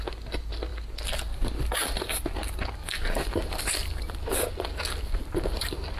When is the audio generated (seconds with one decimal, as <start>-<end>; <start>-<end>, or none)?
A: none